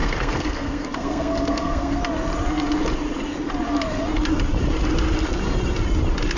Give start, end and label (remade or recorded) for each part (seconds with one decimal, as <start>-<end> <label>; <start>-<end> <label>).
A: 0.0-2.0 remade; 2.0-6.4 recorded